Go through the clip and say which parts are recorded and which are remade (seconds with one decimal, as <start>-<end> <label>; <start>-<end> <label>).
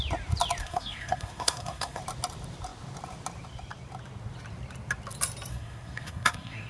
0.0-0.6 recorded; 0.6-2.0 remade; 2.0-5.5 recorded; 5.5-6.7 remade